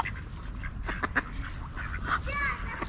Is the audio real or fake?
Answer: real